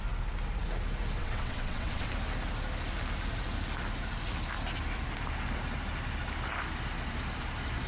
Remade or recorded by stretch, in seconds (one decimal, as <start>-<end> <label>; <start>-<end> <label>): 0.0-1.2 recorded; 1.2-2.1 remade; 2.1-7.9 recorded